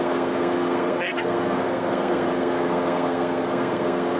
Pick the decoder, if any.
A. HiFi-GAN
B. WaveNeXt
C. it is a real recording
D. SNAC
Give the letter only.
D